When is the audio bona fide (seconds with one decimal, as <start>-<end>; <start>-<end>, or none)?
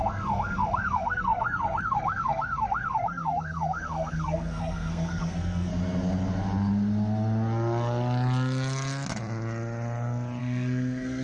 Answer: 5.7-10.4